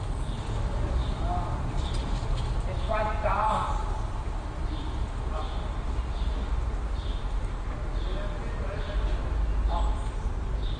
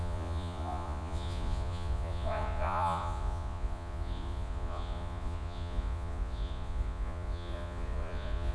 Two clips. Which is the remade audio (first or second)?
second